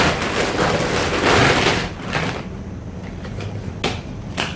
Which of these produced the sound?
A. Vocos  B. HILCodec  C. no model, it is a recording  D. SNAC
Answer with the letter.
C